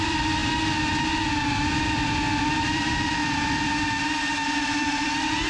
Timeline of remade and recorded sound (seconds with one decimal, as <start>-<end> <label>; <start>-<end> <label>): 0.0-0.4 remade; 0.4-2.4 recorded; 2.4-3.2 remade; 3.2-4.2 recorded; 4.2-5.5 remade